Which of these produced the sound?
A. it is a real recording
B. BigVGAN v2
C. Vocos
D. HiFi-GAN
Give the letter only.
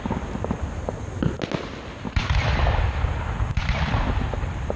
A